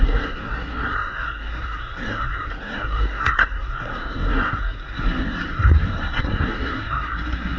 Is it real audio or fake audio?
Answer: fake